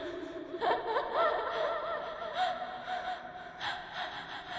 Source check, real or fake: real